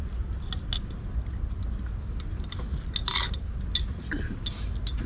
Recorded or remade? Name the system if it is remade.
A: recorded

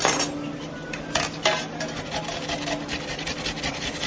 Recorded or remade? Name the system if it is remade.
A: recorded